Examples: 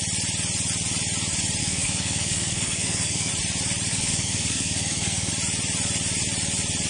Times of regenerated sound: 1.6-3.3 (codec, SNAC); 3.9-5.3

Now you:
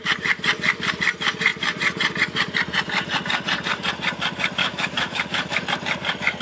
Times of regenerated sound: 4.6-5.6 (autoencoder, DAC-VAE)